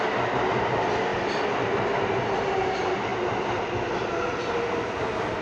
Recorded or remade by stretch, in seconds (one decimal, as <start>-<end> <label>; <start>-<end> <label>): 0.0-1.1 recorded; 1.1-2.2 remade; 2.2-5.4 recorded